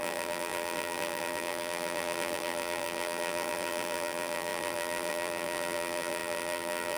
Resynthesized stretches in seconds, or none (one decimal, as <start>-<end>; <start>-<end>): 0.0-7.0